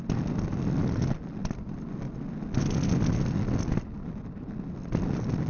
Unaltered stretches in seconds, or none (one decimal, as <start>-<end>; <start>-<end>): 0.0-5.5